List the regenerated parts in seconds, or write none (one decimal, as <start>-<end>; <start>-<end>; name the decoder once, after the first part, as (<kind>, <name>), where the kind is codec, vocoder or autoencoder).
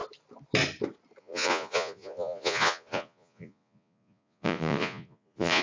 1.2-5.6 (vocoder, Vocos)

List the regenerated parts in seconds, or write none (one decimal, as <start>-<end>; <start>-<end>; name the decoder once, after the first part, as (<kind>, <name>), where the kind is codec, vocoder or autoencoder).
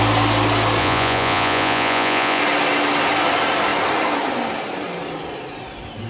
0.8-2.4 (vocoder, Vocos)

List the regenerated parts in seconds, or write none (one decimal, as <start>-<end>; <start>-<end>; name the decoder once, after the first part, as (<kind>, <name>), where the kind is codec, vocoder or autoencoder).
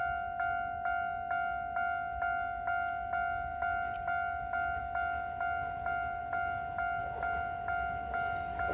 none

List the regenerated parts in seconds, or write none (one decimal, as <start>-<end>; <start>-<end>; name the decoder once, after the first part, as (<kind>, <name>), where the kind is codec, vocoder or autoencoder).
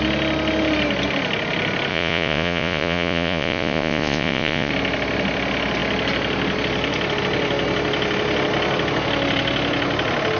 1.9-4.7 (vocoder, Vocos)